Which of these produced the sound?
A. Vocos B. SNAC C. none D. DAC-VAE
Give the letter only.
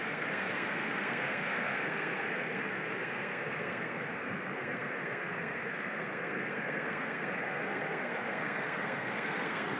B